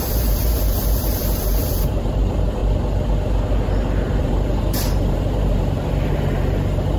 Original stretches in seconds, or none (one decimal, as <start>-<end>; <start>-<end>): 2.6-4.2